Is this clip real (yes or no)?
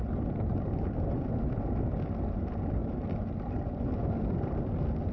yes